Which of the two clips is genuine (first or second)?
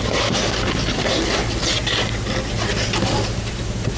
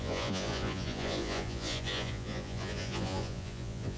first